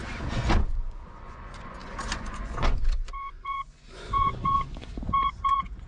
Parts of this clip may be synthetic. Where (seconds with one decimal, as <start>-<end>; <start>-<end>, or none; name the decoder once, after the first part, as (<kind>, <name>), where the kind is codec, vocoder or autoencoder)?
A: 0.0-5.9 (vocoder, Vocos)